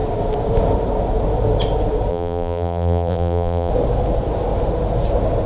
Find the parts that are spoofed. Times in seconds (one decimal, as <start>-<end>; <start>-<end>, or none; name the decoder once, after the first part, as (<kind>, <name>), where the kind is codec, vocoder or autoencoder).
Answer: 2.1-3.7 (vocoder, BigVGAN v2)